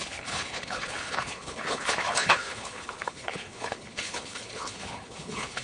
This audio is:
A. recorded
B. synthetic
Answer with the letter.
B